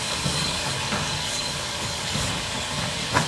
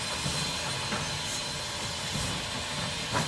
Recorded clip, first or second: second